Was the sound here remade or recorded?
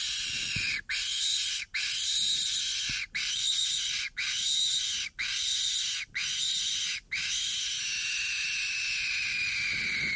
recorded